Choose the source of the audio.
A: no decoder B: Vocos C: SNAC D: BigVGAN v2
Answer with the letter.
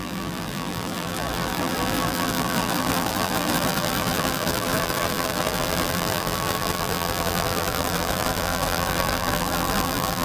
D